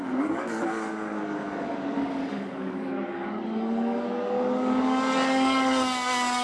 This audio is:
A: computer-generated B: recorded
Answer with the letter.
A